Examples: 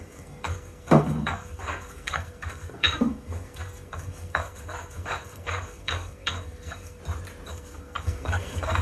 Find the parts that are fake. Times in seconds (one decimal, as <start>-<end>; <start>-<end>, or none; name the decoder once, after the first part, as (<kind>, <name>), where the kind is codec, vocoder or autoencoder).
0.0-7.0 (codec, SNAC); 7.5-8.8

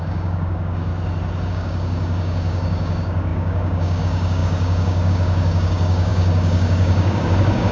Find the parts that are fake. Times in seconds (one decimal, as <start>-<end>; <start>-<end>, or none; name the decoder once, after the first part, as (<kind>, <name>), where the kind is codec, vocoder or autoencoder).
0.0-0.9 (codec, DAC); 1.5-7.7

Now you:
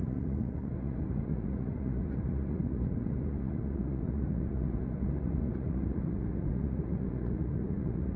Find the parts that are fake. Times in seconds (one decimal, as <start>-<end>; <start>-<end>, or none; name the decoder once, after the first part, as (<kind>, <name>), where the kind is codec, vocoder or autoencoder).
0.0-8.2 (vocoder, Vocos)

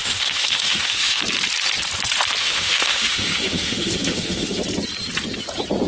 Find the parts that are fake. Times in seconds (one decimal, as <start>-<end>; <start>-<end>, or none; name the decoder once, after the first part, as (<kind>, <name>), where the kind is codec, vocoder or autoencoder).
0.0-1.2 (autoencoder, DAC-VAE); 2.4-4.6

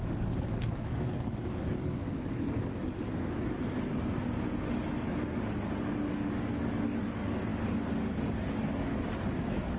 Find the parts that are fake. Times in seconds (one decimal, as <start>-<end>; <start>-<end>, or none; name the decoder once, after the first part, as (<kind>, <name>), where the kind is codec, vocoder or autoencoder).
0.0-9.8 (codec, DAC)